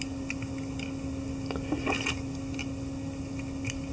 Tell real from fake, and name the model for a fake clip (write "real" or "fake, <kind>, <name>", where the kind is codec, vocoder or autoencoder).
real